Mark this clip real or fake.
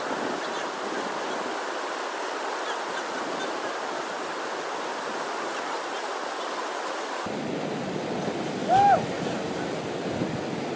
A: real